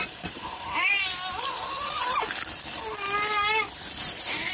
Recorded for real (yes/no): no